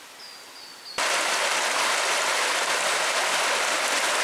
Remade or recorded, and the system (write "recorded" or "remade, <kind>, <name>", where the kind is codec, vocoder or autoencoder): recorded